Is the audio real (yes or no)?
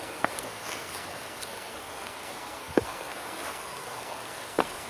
no